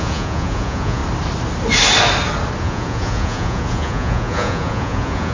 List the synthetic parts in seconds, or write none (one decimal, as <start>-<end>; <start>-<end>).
0.0-1.0; 2.6-5.3